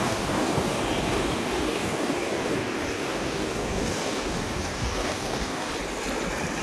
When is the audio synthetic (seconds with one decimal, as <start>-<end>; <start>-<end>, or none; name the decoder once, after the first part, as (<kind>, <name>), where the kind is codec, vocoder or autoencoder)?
0.0-5.7 (codec, DAC)